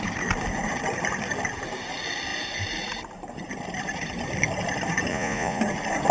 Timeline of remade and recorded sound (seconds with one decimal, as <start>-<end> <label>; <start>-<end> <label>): 0.0-5.1 recorded; 5.1-5.6 remade; 5.6-6.1 recorded